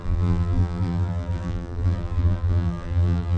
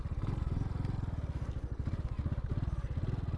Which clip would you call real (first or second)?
second